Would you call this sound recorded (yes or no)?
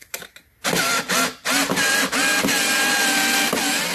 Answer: yes